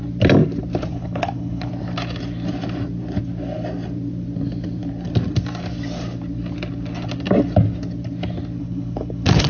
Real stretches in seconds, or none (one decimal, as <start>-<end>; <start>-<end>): 0.0-0.9; 1.7-8.6